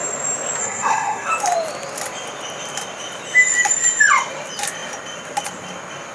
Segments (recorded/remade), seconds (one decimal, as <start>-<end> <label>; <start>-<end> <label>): 0.0-0.6 recorded; 0.6-1.3 remade; 1.3-6.1 recorded